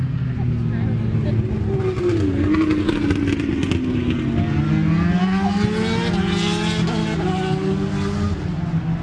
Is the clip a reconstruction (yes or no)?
no